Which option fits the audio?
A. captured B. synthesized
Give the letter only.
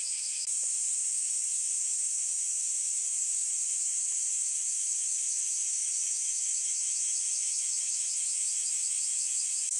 B